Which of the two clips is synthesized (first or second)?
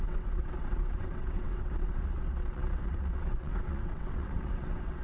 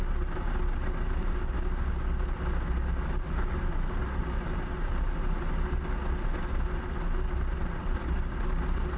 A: first